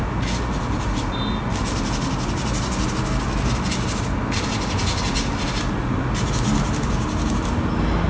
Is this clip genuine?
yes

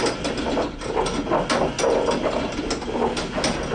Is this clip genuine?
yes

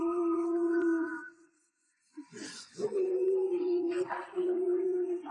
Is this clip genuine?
no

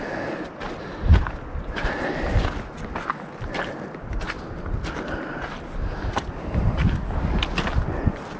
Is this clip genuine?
yes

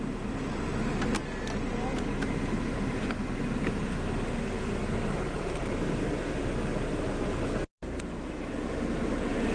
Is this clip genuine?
yes